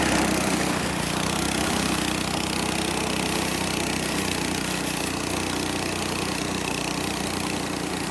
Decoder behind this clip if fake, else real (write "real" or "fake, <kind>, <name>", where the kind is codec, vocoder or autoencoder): real